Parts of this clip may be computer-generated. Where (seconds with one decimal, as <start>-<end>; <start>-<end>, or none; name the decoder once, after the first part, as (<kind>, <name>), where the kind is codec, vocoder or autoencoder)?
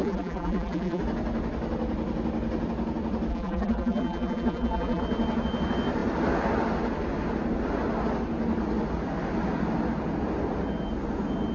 0.0-1.0 (vocoder, BigVGAN v2); 3.3-5.0